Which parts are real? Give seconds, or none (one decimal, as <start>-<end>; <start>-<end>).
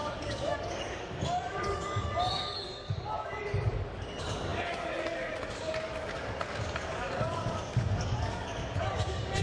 none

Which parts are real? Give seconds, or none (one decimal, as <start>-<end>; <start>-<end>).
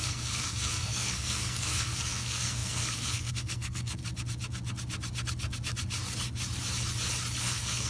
4.0-7.4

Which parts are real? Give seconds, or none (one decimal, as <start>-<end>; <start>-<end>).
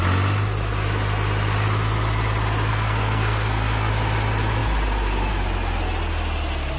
0.0-2.7; 3.9-6.8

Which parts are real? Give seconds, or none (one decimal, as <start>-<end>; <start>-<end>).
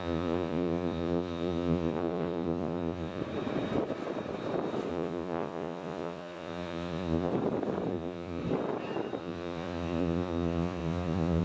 3.2-4.9; 7.3-7.9; 8.4-9.2